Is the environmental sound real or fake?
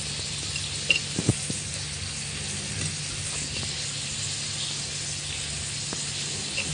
real